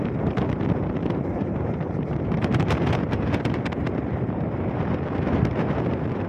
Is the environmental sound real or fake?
fake